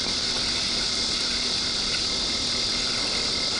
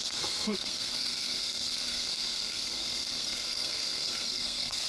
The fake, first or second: second